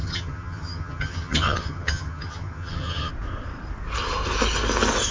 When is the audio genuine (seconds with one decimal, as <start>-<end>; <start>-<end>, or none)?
3.1-5.1